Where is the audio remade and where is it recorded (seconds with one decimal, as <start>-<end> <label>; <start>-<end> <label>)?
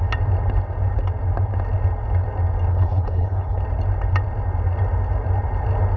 0.0-2.7 recorded; 2.7-3.6 remade; 3.6-6.0 recorded